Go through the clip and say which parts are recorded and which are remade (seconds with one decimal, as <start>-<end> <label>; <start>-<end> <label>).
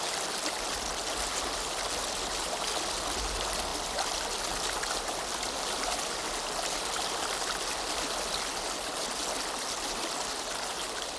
0.0-11.2 recorded